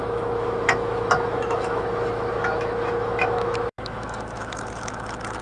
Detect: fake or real fake